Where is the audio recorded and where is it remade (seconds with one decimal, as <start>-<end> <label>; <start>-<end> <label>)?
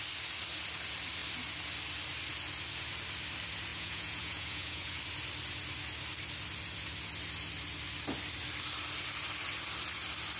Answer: 0.0-3.7 recorded; 3.7-5.0 remade; 5.0-10.4 recorded